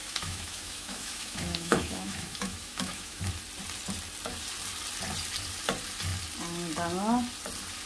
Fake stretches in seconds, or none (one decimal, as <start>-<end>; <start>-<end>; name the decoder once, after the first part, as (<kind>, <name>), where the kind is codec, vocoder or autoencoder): 0.0-3.3 (autoencoder, DAC-VAE)